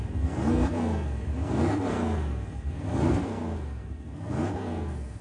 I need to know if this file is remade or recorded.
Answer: remade